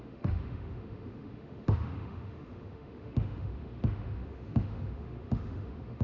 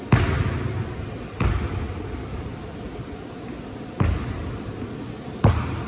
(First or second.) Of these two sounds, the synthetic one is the first